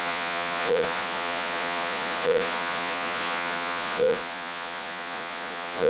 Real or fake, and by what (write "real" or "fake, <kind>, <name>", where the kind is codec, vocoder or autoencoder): fake, vocoder, Vocos